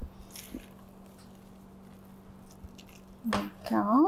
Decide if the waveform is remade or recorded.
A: recorded